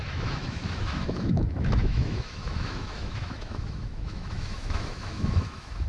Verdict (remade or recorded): remade